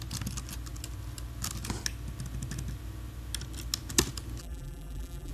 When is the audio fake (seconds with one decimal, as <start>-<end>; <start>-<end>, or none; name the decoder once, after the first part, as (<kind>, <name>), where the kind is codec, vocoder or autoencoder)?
4.4-5.3 (vocoder, BigVGAN v2)